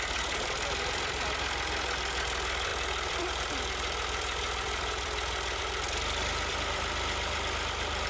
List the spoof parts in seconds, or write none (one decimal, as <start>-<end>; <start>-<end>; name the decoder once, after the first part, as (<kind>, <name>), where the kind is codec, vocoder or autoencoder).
0.0-8.1 (vocoder, BigVGAN v2)